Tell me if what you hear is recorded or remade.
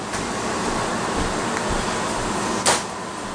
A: recorded